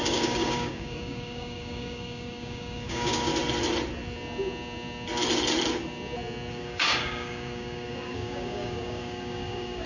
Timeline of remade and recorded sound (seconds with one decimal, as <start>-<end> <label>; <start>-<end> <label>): 0.0-3.3 remade; 3.3-6.5 recorded; 6.5-9.9 remade